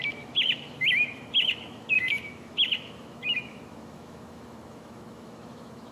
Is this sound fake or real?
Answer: fake